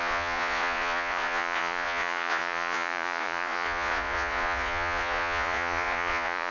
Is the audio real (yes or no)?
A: no